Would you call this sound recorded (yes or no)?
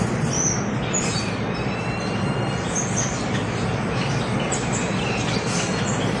yes